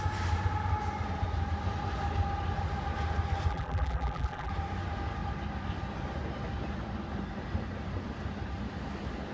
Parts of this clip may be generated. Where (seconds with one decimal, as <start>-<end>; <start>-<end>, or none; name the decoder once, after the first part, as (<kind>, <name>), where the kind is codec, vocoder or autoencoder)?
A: 3.5-4.5 (vocoder, BigVGAN v2)